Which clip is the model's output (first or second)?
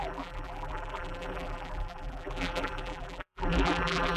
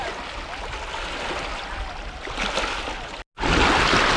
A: first